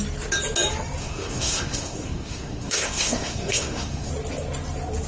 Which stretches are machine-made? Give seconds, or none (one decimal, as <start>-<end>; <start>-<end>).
1.0-4.1